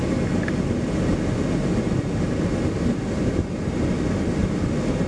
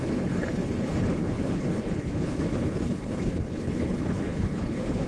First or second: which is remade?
second